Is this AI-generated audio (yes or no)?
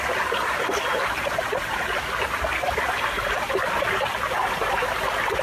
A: no